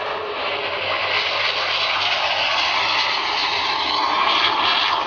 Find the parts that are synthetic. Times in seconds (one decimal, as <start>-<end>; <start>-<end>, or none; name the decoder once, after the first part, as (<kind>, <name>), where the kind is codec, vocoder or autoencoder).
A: none